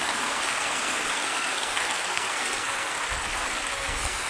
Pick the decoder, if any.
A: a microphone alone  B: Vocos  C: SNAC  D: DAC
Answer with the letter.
C